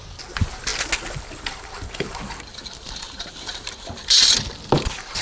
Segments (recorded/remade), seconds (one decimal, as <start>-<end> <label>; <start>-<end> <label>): 0.0-5.2 recorded